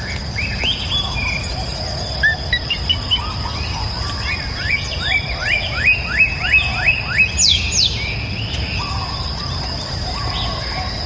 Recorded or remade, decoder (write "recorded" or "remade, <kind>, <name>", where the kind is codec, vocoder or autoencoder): recorded